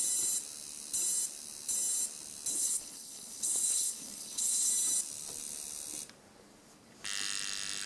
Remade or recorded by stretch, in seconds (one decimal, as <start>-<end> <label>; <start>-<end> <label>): 0.0-2.5 recorded; 2.5-4.7 remade; 4.7-7.9 recorded